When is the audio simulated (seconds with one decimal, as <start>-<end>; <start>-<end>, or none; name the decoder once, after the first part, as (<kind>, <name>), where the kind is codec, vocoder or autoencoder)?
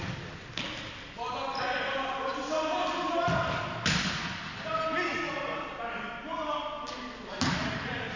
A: none